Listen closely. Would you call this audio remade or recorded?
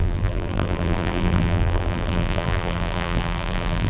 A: remade